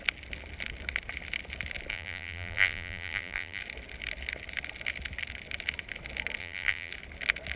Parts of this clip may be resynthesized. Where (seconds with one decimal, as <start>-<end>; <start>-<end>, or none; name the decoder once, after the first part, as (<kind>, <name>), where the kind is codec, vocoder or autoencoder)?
1.9-3.6 (vocoder, BigVGAN v2); 6.4-6.9